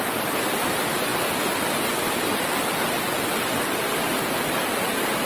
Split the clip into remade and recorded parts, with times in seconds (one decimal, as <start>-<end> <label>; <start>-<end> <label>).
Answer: 0.0-5.3 recorded